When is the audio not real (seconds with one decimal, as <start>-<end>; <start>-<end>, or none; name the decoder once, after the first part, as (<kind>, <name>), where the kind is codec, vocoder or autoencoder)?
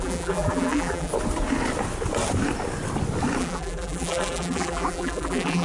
0.0-1.1 (vocoder, BigVGAN v2); 3.4-5.6